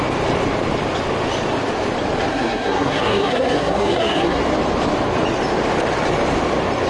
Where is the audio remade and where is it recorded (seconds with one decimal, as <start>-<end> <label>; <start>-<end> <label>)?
0.0-2.3 recorded; 2.3-4.4 remade; 4.4-6.9 recorded